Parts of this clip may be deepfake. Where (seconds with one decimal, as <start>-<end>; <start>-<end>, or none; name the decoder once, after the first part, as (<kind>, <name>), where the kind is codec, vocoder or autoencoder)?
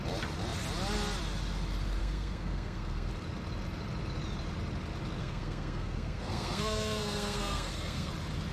2.0-3.1 (codec, SNAC); 5.2-8.1